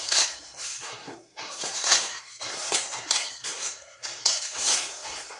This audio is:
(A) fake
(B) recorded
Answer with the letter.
A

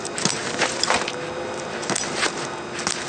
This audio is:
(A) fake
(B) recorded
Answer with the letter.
B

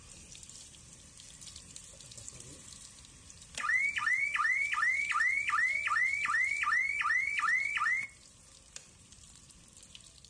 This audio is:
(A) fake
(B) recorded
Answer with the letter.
A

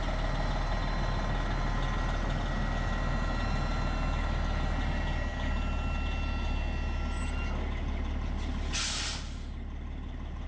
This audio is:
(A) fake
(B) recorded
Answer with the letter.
B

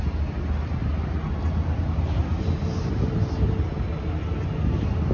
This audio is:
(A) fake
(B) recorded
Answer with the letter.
B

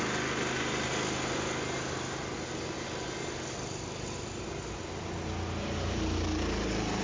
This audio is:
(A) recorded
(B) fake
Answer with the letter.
A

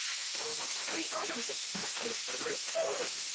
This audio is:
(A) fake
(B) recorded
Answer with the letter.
A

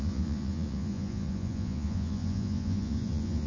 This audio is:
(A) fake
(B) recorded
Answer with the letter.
A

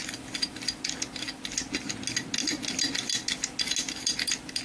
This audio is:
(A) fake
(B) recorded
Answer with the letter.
B